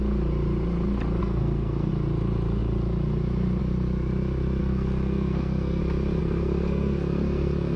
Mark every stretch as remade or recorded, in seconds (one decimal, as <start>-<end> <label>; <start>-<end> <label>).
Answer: 0.0-1.2 recorded; 1.2-1.9 remade; 1.9-4.6 recorded; 4.6-5.8 remade; 5.8-6.2 recorded; 6.2-7.8 remade